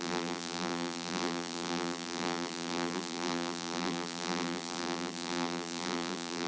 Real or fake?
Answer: fake